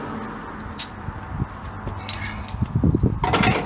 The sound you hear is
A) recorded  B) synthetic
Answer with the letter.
A